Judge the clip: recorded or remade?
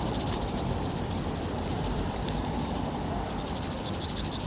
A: remade